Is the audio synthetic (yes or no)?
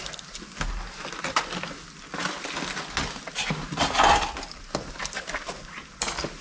no